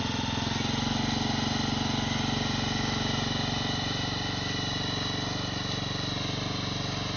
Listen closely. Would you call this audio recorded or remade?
recorded